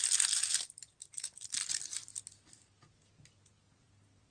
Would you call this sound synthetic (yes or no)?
no